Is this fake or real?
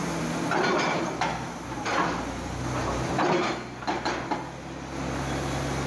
real